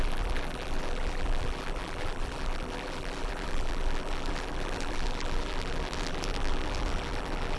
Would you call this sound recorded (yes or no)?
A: no